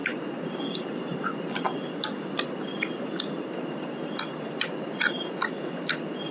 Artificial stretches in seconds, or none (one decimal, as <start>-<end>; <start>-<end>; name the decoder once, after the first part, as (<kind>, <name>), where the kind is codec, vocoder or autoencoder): none

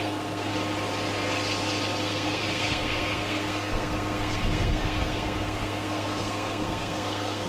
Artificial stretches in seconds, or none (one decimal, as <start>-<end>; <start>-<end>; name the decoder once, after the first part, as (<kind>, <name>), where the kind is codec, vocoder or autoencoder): 0.0-0.5 (codec, SNAC); 2.0-7.5

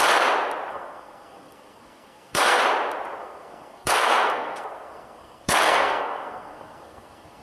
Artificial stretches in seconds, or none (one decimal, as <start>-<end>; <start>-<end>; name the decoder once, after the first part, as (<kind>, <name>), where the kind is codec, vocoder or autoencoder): 0.7-2.6 (codec, SNAC); 3.2-7.4

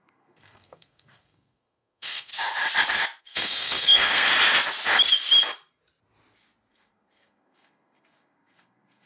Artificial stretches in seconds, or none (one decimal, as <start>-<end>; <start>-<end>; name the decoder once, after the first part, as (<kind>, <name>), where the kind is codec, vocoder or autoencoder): 0.0-2.3 (codec, SNAC); 3.2-4.3; 6.7-9.1

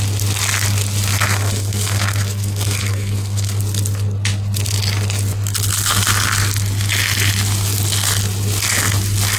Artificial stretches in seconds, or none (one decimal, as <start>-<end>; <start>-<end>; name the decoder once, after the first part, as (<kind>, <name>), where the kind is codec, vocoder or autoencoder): 1.1-3.6 (codec, SNAC)

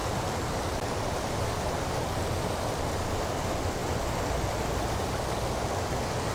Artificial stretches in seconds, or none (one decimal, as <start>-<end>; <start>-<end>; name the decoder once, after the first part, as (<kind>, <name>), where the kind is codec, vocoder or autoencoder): none